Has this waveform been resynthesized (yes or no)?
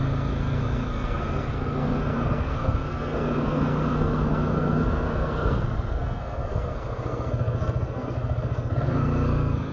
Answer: yes